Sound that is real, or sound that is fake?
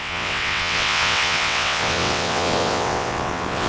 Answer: fake